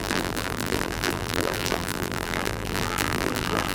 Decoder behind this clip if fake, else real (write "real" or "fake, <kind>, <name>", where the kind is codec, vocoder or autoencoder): fake, vocoder, BigVGAN v2